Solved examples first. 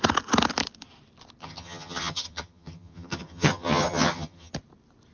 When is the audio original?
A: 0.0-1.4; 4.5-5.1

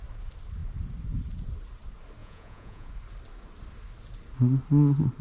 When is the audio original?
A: 0.0-2.2; 2.9-5.2

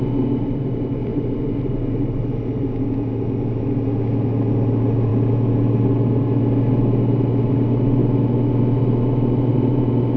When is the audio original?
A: 0.0-1.1; 2.2-9.5

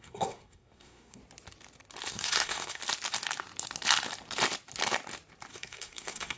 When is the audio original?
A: 1.2-2.1; 2.8-5.5

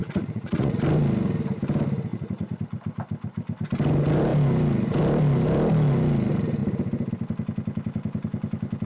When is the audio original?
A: 0.8-2.1; 2.6-8.9

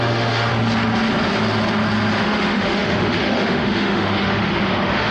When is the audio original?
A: 0.5-2.2

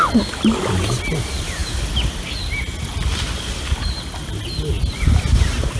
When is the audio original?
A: 0.0-5.8

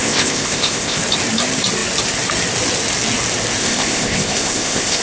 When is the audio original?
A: 1.0-3.6